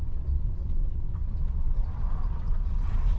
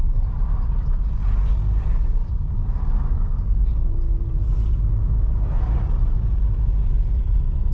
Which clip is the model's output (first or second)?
first